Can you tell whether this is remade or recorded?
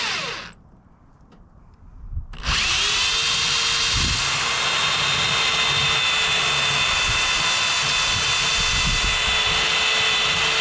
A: recorded